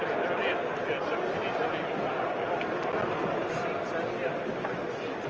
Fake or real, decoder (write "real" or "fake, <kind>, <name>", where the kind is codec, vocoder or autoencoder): real